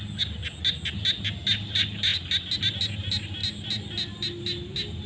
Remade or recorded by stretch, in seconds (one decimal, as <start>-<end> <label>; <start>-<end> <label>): 0.0-5.1 recorded

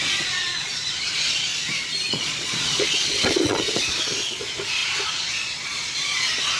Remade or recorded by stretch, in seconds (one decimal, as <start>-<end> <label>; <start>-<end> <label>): 0.0-1.5 remade; 1.5-2.1 recorded; 2.1-6.6 remade

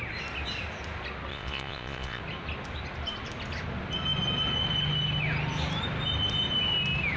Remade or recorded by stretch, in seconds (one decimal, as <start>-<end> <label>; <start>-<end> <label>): 0.0-1.3 recorded; 1.3-2.2 remade; 2.2-7.2 recorded

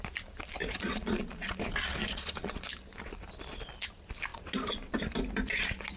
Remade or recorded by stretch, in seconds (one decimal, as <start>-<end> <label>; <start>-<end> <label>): 0.0-0.6 recorded; 0.6-1.5 remade; 1.5-2.0 recorded; 2.0-2.7 remade; 2.7-6.0 recorded

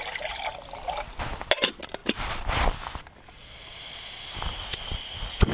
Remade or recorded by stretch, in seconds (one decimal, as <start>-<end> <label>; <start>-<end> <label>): 0.0-5.5 recorded

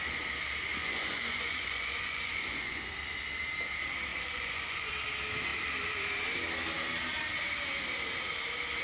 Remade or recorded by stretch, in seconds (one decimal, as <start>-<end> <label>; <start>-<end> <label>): 0.0-0.8 recorded; 0.8-2.9 remade; 2.9-4.1 recorded; 4.1-4.9 remade; 4.9-8.8 recorded